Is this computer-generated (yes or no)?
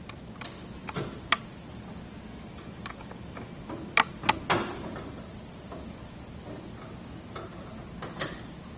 no